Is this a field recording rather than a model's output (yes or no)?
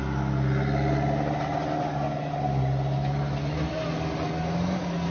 yes